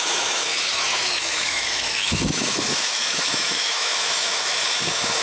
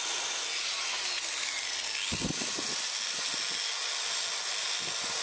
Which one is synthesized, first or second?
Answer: first